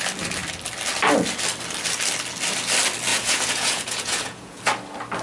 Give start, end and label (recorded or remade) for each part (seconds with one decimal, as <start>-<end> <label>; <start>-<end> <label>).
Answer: 0.0-3.1 recorded; 3.1-4.6 remade; 4.6-5.2 recorded